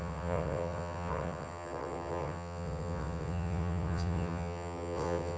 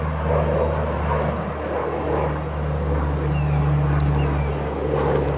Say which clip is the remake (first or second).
first